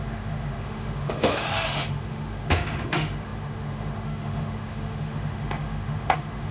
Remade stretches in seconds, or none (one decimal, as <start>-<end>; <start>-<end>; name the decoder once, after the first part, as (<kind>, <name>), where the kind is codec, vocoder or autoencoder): 0.0-6.5 (autoencoder, DAC-VAE)